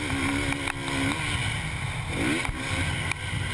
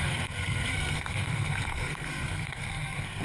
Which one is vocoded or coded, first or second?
second